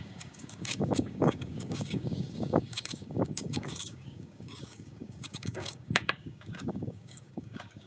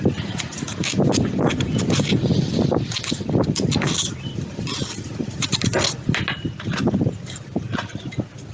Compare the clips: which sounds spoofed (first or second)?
first